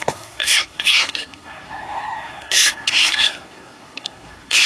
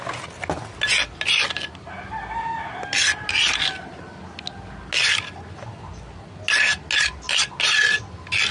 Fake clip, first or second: first